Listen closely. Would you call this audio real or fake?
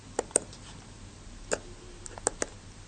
real